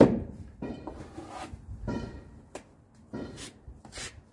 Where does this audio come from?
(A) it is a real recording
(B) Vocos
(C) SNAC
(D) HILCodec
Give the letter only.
A